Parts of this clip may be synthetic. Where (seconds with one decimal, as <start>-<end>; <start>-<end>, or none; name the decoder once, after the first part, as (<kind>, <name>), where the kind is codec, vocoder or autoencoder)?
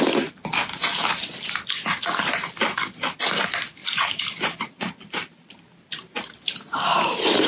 3.8-5.6 (vocoder, BigVGAN v2)